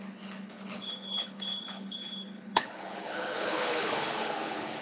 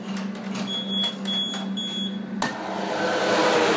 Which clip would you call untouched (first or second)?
second